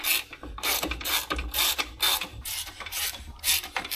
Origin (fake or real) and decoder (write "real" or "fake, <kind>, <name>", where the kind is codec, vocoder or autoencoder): fake, vocoder, BigVGAN v2